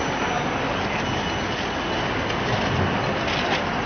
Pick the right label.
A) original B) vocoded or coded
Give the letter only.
A